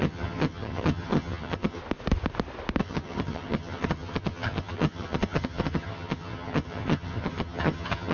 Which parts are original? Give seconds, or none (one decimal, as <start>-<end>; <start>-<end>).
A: 1.8-2.8